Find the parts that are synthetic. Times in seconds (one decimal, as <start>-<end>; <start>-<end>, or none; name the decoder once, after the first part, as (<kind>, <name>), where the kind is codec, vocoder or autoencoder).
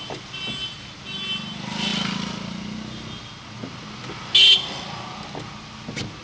none